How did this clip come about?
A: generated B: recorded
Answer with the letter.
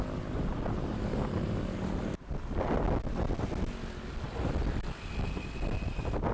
B